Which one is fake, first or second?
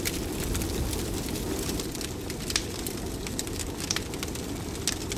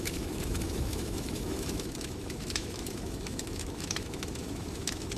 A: second